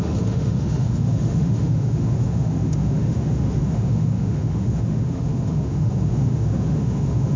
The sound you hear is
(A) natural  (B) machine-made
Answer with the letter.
B